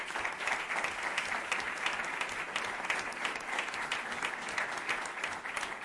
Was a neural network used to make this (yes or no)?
no